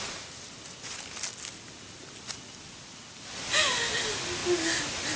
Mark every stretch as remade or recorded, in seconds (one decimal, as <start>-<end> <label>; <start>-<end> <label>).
0.0-5.2 recorded